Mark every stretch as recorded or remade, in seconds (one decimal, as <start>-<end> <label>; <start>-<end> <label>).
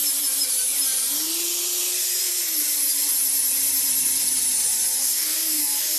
0.0-5.0 recorded; 5.0-5.6 remade; 5.6-6.0 recorded